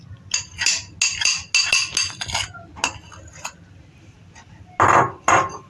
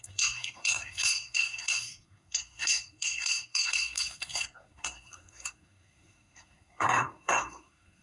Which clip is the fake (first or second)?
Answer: second